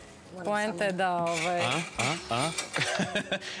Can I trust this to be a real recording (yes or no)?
yes